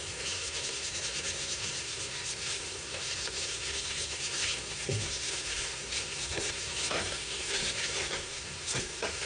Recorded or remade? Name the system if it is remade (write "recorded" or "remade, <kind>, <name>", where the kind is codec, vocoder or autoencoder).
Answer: remade, codec, SNAC